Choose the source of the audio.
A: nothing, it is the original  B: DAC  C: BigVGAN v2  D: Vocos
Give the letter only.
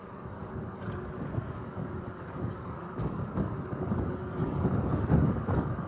B